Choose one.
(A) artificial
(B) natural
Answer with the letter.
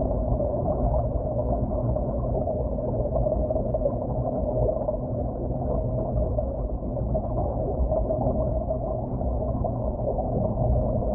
A